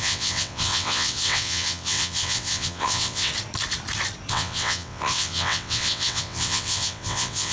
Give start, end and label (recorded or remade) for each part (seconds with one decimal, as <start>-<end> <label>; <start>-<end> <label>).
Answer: 0.0-3.3 remade; 3.3-4.3 recorded; 4.3-7.5 remade